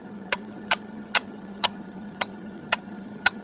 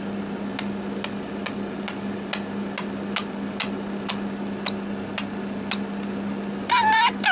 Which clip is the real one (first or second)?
second